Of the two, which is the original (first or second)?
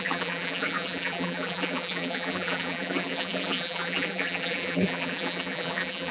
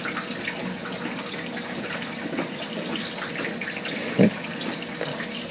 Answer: second